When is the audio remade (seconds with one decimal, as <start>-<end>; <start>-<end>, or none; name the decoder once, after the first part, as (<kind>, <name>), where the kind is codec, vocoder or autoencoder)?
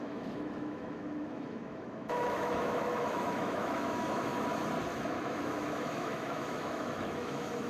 0.0-4.3 (autoencoder, DAC-VAE); 4.9-7.7